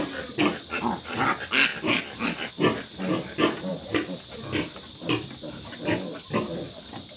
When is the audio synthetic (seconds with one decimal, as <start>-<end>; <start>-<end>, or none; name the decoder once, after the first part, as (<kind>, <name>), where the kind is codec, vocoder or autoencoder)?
none